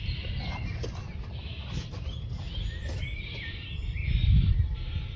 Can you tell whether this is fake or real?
real